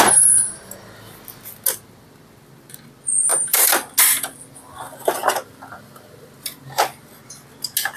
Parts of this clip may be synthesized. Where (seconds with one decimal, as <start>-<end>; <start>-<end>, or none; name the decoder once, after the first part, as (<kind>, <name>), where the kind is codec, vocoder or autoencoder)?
3.3-3.9 (vocoder, BigVGAN v2); 5.2-6.3